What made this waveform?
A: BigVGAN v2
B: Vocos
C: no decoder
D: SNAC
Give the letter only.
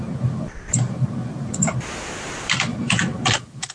A